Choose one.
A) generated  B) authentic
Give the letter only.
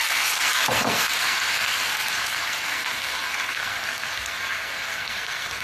A